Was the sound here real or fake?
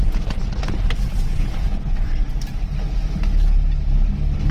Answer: real